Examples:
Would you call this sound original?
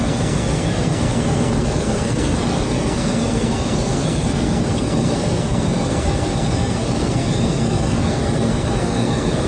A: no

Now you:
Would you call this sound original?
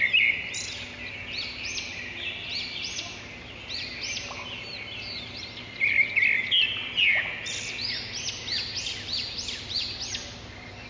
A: yes